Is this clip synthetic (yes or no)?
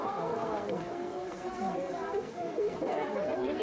yes